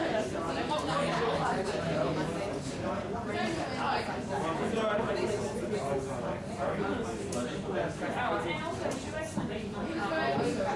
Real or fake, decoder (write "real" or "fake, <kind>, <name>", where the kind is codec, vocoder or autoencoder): real